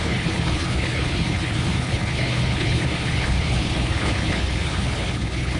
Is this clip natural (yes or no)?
no